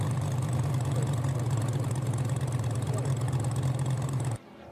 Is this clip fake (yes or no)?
yes